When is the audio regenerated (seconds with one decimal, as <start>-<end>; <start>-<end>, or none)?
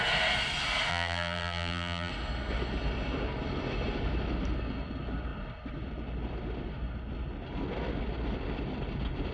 0.9-2.1